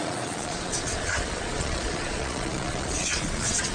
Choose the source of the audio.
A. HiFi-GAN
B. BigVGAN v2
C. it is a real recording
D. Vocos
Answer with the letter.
D